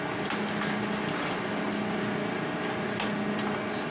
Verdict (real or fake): real